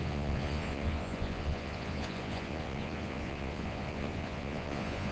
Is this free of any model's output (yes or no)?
no